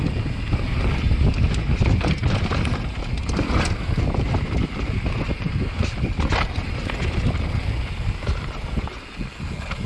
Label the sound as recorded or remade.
recorded